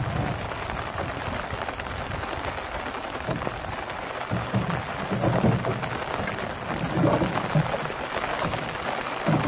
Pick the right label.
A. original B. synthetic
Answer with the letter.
A